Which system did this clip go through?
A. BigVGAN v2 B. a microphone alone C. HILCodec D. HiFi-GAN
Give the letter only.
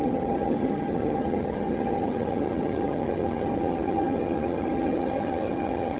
D